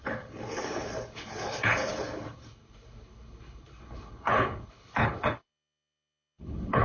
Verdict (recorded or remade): remade